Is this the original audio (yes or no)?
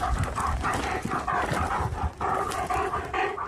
yes